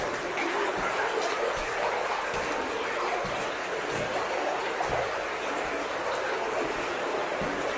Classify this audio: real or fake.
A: real